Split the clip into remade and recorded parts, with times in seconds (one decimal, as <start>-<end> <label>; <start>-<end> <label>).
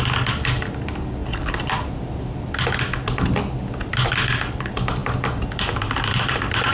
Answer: 0.0-6.7 recorded